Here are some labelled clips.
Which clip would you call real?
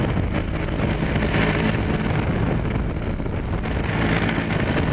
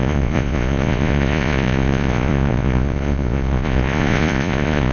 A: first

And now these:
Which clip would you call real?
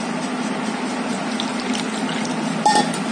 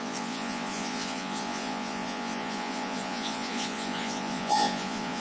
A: first